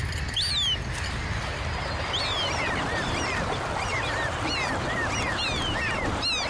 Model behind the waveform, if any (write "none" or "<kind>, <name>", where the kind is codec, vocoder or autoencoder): none